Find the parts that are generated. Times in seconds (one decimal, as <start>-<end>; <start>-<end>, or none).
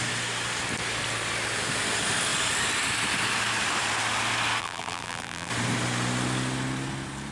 4.6-5.5